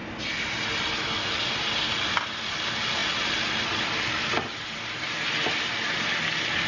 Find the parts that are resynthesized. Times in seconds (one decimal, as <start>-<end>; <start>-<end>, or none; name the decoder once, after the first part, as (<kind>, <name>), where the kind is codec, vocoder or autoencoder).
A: none